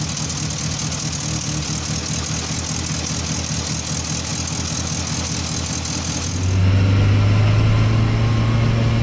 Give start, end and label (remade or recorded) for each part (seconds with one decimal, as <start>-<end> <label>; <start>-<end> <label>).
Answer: 0.0-9.0 recorded